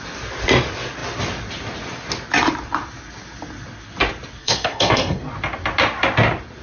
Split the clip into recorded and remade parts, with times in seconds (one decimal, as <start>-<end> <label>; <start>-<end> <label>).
0.0-4.4 recorded; 4.4-5.2 remade; 5.2-6.6 recorded

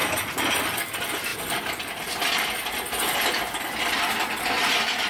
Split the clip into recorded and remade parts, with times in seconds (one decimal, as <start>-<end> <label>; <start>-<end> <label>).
0.0-5.1 remade

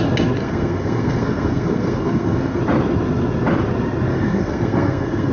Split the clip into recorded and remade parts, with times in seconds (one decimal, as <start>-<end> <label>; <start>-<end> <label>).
0.0-0.4 recorded; 0.4-2.6 remade; 2.6-4.1 recorded; 4.1-5.3 remade

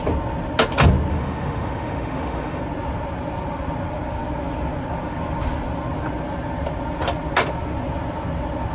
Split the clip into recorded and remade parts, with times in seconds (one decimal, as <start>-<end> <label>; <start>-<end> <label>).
0.0-1.1 recorded; 1.1-2.6 remade; 2.6-8.7 recorded

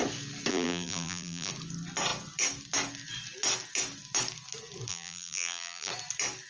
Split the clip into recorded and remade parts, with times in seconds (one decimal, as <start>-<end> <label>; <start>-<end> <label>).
0.0-0.5 recorded; 0.5-1.5 remade; 1.5-4.9 recorded; 4.9-5.9 remade; 5.9-6.5 recorded

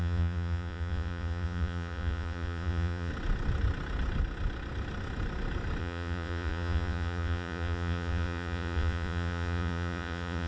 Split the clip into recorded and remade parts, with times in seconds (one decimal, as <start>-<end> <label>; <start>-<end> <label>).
0.0-3.1 remade; 3.1-5.8 recorded; 5.8-10.5 remade